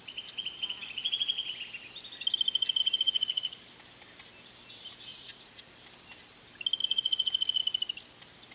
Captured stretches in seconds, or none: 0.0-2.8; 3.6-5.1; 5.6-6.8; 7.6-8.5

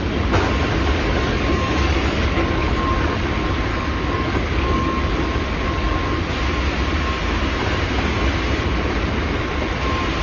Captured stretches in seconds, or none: 0.0-0.7; 2.8-3.7; 5.1-10.2